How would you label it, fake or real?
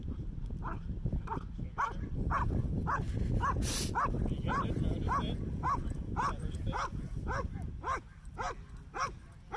real